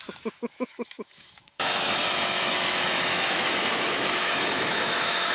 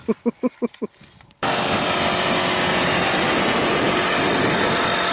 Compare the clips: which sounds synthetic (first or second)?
first